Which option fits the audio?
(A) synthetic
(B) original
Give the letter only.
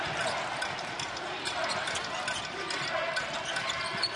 B